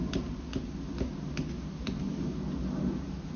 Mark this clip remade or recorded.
recorded